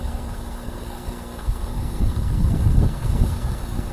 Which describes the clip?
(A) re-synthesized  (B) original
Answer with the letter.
A